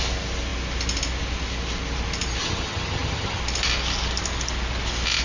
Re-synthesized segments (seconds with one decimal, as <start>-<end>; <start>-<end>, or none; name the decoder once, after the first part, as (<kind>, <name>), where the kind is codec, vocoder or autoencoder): 2.4-3.4 (vocoder, HiFi-GAN)